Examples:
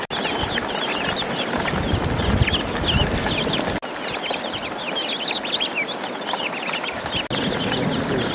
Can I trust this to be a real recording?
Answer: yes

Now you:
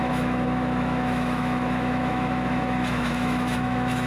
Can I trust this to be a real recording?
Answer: no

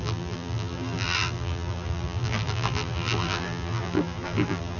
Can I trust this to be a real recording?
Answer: no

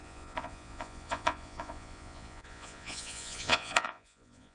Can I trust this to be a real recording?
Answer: no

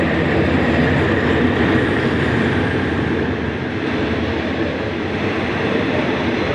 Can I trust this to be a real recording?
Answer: no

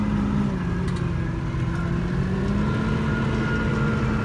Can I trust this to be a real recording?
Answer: yes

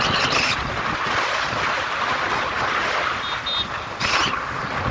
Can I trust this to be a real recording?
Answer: yes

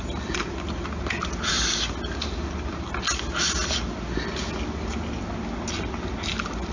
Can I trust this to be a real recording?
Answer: yes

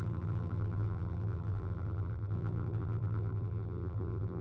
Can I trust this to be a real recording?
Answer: no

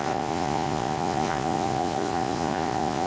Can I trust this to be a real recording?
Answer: no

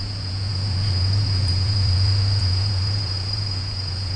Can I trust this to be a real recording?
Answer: no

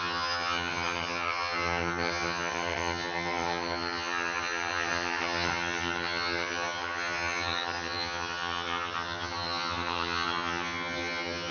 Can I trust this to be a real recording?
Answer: no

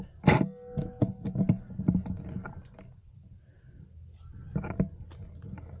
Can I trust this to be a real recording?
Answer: yes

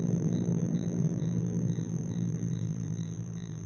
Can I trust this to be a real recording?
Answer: no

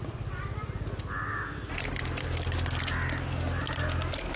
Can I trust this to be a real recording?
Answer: yes